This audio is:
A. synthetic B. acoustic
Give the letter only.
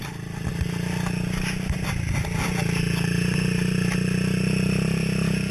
B